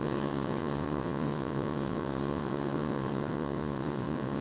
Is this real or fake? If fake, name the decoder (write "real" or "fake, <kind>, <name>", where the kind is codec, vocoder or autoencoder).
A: fake, vocoder, WaveNeXt